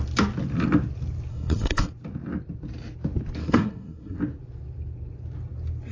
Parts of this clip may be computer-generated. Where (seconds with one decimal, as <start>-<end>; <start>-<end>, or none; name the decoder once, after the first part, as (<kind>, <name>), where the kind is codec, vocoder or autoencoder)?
1.3-1.9 (codec, SNAC); 3.4-4.2